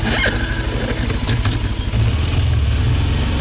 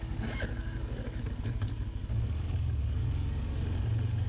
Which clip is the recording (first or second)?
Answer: first